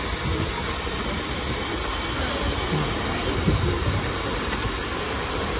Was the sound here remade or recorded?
recorded